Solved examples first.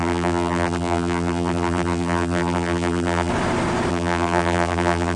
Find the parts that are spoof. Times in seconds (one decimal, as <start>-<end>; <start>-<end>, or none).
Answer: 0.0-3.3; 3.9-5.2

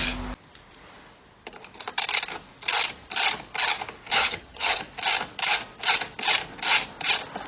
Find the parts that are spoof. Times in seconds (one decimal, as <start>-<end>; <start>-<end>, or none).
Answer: 4.2-4.8

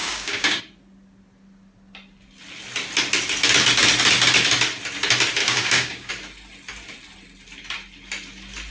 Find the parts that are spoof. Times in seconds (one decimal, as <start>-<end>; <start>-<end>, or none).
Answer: 0.0-0.6; 5.4-6.1

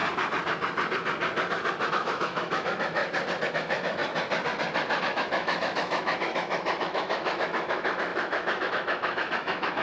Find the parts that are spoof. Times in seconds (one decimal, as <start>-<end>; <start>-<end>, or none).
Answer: 1.9-3.0; 3.5-4.0; 5.0-9.8